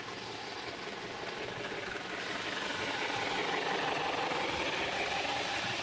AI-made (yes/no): no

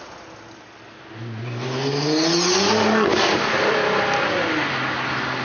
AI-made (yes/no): no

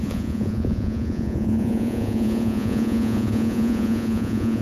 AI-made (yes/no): yes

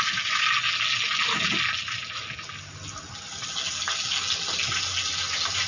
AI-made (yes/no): no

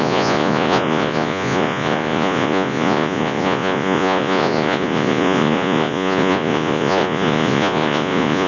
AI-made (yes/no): yes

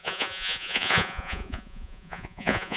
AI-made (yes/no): yes